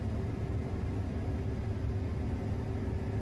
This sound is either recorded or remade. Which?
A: recorded